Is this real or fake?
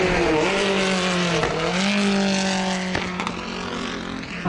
real